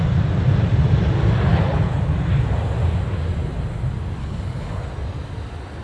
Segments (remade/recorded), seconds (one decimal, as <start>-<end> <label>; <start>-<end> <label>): 0.0-1.5 recorded; 1.5-2.0 remade; 2.0-4.2 recorded; 4.2-4.8 remade; 4.8-5.8 recorded